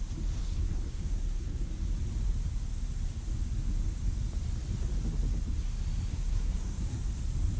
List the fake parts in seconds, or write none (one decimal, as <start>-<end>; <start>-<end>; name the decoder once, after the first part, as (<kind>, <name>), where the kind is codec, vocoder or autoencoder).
0.4-1.7 (codec, SNAC); 6.1-7.0